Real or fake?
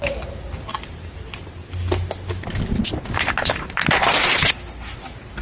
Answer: real